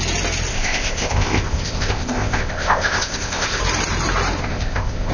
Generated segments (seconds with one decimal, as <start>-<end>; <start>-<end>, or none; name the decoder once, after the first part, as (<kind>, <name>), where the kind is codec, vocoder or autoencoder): 0.5-3.6 (codec, ZipCodec); 4.4-5.1